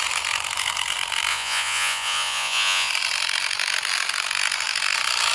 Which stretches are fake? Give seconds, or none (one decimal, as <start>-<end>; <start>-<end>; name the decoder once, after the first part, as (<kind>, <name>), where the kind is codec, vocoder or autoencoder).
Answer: 1.3-2.9 (vocoder, Vocos)